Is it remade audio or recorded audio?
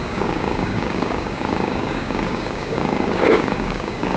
remade